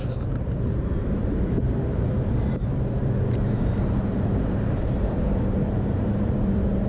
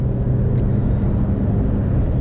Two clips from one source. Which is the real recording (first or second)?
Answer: second